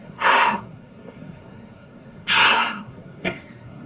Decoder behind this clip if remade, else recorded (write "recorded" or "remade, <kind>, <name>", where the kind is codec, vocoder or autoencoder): remade, codec, SNAC